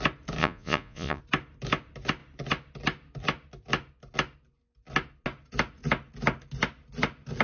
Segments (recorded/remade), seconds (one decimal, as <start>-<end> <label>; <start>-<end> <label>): 0.0-0.4 recorded; 0.4-1.2 remade; 1.2-7.4 recorded